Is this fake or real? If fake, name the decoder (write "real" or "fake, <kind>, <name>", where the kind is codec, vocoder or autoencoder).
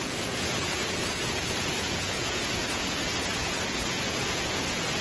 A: fake, vocoder, Vocos